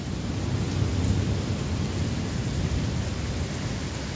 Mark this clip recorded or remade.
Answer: recorded